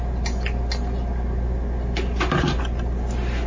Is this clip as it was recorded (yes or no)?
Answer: yes